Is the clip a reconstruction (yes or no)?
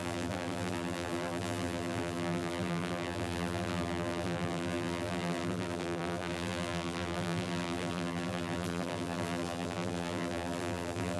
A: yes